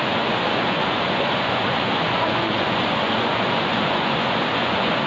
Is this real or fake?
fake